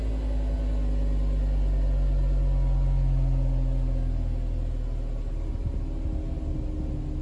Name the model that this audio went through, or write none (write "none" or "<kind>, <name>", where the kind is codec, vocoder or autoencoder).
none